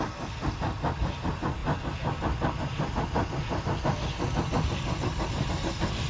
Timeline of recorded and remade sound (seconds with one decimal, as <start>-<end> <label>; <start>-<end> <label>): 0.0-6.1 recorded